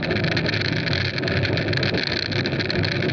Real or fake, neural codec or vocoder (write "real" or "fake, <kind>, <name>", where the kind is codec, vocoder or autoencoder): real